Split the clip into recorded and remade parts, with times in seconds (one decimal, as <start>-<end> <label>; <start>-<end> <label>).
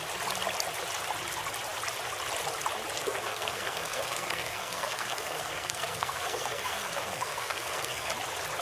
0.0-3.0 recorded; 3.0-8.1 remade; 8.1-8.6 recorded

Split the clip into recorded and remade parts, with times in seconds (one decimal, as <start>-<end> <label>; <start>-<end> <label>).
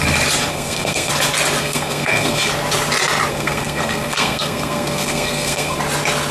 0.0-0.5 recorded; 0.5-1.1 remade; 1.1-1.6 recorded; 1.6-2.5 remade; 2.5-3.3 recorded; 3.3-5.8 remade; 5.8-6.3 recorded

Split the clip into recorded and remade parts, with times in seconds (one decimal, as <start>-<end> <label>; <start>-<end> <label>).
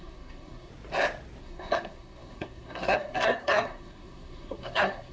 0.0-0.7 remade; 0.7-1.4 recorded; 1.4-5.1 remade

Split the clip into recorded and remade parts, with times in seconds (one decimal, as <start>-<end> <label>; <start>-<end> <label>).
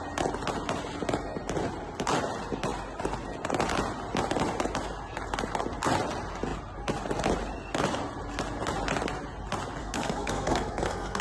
0.0-9.8 recorded; 9.8-11.2 remade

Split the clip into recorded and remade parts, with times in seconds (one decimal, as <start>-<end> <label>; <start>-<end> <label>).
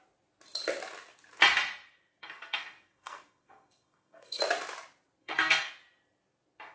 0.0-2.2 recorded; 2.2-4.4 remade; 4.4-5.2 recorded; 5.2-5.7 remade; 5.7-6.7 recorded